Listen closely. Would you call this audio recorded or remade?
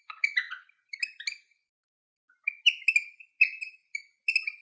recorded